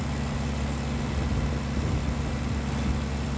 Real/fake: real